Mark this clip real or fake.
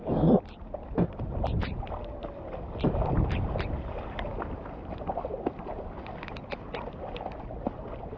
real